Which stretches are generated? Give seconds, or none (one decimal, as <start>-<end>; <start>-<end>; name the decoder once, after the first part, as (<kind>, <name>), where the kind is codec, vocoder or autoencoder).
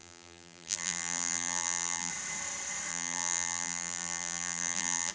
0.0-2.1 (vocoder, BigVGAN v2); 2.9-5.1